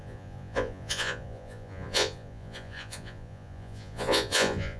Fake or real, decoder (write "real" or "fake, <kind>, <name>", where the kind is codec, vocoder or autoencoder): fake, vocoder, Vocos